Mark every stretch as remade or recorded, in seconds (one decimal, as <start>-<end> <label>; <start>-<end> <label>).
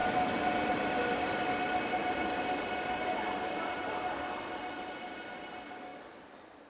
0.0-6.7 recorded